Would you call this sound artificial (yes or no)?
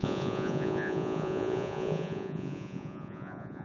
yes